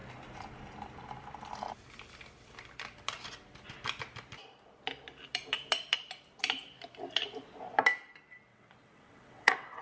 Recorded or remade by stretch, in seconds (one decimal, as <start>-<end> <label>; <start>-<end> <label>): 0.0-8.5 recorded; 8.5-9.8 remade